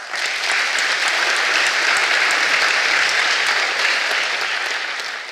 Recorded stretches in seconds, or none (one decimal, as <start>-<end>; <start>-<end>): 0.0-5.3